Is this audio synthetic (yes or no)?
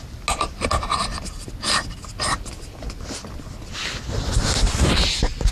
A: no